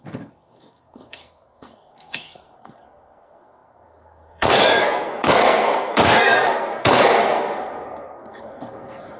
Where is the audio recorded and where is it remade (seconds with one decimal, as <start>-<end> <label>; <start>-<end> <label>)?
0.0-9.2 remade